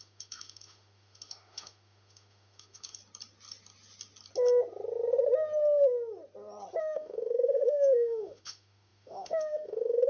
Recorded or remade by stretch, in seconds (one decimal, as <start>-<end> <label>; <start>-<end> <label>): 0.0-3.0 remade; 3.0-6.8 recorded; 6.8-10.1 remade

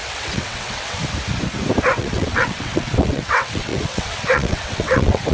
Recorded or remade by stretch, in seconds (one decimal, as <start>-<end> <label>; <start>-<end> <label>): 0.0-1.0 remade; 1.0-2.0 recorded; 2.0-5.3 remade